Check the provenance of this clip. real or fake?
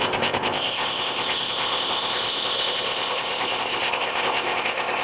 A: fake